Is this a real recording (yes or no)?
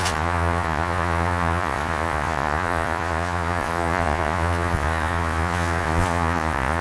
no